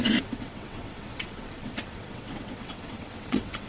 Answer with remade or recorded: remade